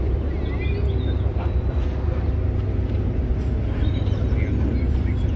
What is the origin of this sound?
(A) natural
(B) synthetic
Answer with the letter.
A